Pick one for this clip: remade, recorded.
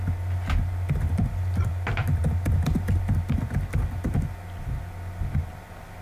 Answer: recorded